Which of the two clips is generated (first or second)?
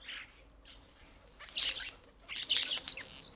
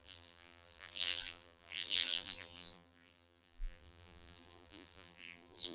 second